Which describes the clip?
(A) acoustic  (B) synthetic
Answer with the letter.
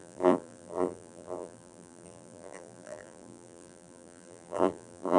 B